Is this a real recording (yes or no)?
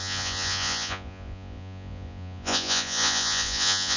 no